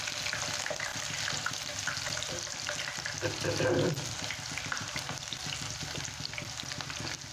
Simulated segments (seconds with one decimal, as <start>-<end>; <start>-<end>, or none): 4.8-5.4

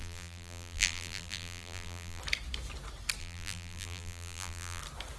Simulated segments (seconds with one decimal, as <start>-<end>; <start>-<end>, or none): 0.0-2.2; 3.2-4.8